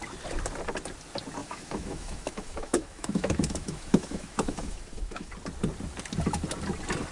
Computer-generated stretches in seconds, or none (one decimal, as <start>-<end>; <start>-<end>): 1.4-5.3